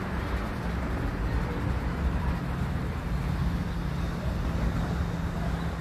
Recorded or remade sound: recorded